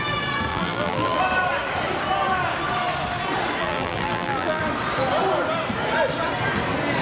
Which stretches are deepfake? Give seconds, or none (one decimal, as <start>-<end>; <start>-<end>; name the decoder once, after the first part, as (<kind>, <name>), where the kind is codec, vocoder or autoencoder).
0.5-1.2 (vocoder, BigVGAN v2); 3.6-4.6